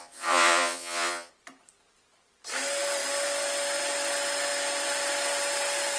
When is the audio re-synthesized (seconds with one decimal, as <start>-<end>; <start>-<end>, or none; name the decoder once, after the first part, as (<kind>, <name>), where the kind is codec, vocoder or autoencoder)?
0.0-1.3 (vocoder, Vocos)